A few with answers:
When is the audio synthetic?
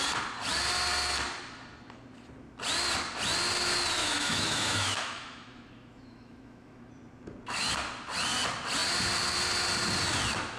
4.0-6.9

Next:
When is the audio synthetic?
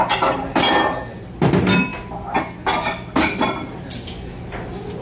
none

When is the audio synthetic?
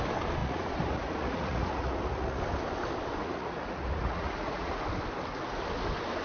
0.4-2.4; 3.2-4.8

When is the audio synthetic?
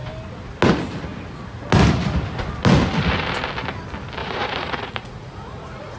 4.2-6.0